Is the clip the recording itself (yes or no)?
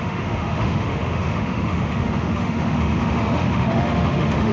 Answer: no